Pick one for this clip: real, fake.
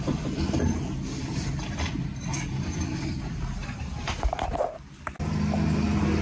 real